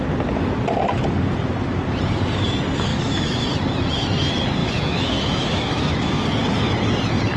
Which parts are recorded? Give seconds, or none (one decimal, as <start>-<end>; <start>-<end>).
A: 0.0-2.9; 3.5-4.6; 6.2-7.4